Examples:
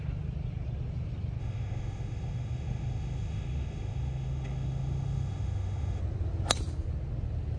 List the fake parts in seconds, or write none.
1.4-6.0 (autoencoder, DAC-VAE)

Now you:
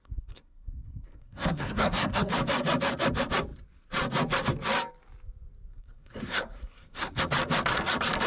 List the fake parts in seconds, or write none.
0.0-2.3 (codec, SNAC); 5.7-7.2

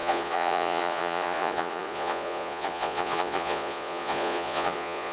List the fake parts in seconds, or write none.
0.0-5.1 (vocoder, Vocos)

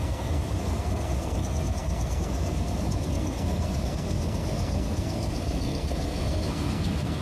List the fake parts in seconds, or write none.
0.0-7.2 (codec, SNAC)

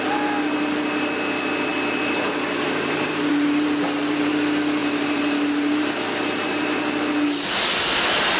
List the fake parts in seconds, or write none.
1.7-4.3 (vocoder, BigVGAN v2); 4.8-6.6

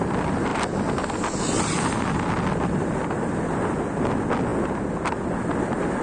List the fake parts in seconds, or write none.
none

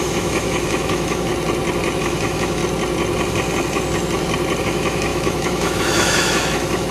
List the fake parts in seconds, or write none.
0.0-1.3 (autoencoder, DAC-VAE); 2.0-2.6; 4.6-6.9

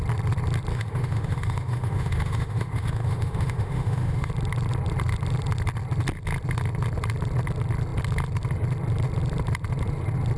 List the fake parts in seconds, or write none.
0.7-4.3 (autoencoder, DAC-VAE)